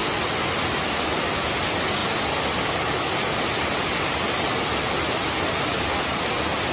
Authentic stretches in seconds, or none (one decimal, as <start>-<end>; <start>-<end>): 0.0-6.7